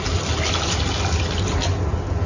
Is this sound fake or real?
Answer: real